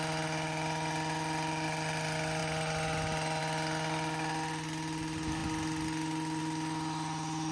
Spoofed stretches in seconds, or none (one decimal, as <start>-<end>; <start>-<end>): none